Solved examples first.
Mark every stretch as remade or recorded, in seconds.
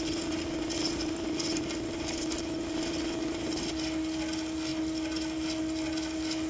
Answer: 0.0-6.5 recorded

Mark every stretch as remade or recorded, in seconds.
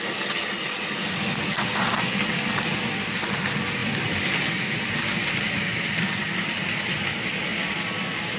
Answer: 0.0-8.4 recorded